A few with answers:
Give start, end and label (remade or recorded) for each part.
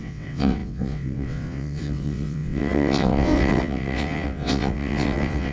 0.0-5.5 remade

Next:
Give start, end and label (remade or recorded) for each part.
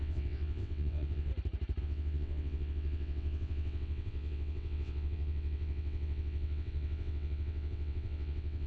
0.0-1.3 remade; 1.3-1.8 recorded; 1.8-8.7 remade